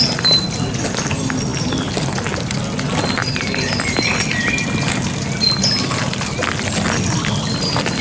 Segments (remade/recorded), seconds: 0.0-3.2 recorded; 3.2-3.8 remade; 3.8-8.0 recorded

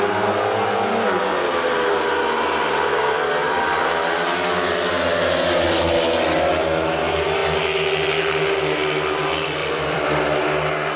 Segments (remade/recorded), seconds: 0.0-9.6 recorded; 9.6-10.2 remade; 10.2-11.0 recorded